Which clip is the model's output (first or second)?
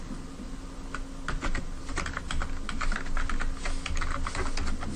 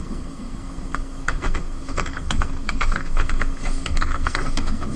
second